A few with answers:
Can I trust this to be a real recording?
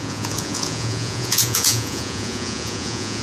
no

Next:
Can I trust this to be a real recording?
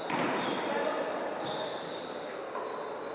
yes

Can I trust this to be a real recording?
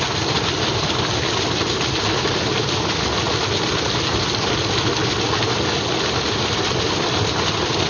yes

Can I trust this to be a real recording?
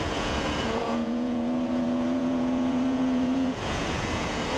no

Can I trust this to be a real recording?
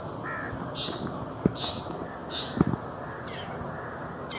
yes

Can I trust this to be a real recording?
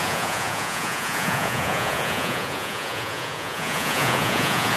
no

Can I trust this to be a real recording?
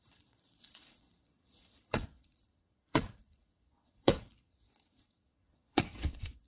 no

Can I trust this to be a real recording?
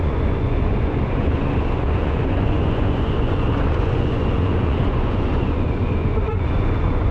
no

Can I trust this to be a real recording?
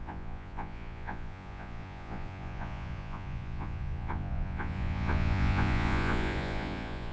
no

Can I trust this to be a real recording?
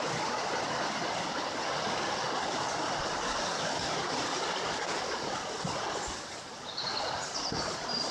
yes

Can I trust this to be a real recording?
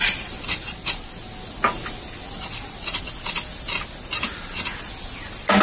yes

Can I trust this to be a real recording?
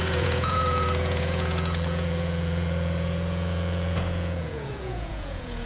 no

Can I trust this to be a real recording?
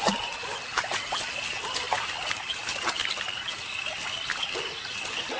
yes